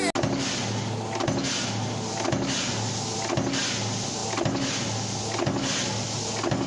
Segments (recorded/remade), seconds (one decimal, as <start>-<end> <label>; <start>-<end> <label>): 0.0-6.7 recorded